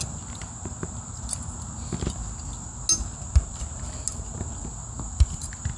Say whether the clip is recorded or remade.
recorded